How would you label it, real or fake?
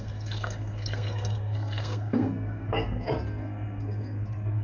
fake